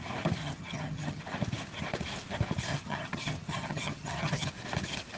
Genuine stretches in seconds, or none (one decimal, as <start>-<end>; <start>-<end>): 0.0-0.4; 1.2-2.7; 4.5-5.2